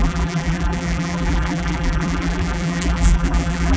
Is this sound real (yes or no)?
no